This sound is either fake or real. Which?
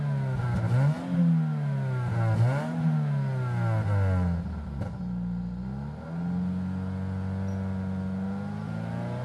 real